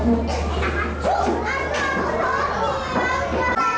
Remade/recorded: recorded